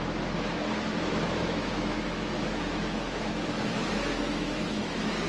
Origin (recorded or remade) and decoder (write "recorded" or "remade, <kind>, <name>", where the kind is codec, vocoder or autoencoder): remade, autoencoder, DAC-VAE